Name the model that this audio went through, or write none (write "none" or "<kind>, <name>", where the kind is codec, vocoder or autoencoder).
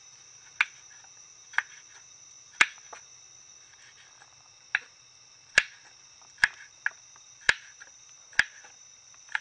none